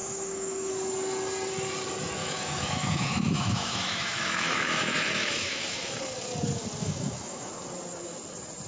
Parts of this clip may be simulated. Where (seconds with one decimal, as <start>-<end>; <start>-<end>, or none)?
0.0-0.7; 2.2-6.0; 6.8-7.5